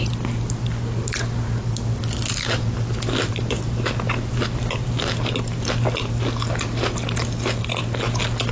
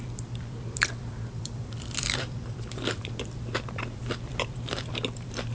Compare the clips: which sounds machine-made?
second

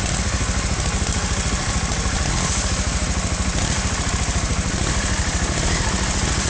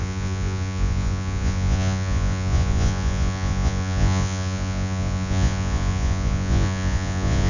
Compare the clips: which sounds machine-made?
second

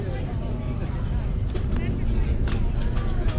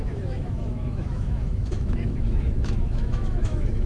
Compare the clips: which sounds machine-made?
second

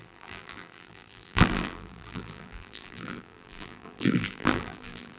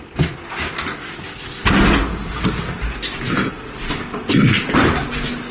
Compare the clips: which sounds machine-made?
first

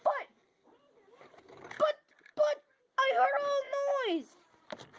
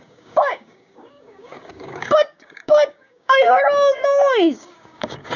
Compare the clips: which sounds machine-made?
second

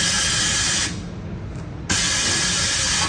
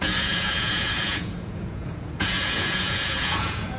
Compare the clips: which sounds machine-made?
second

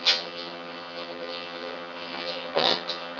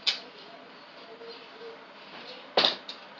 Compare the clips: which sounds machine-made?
first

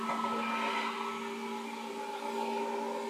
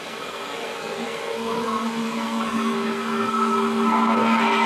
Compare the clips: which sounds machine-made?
second